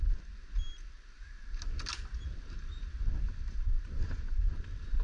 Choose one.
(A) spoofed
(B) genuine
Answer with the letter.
B